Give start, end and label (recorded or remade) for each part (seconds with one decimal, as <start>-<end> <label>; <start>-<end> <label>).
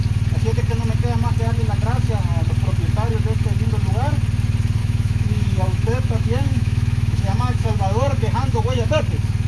0.0-4.8 recorded; 4.8-9.0 remade; 9.0-9.5 recorded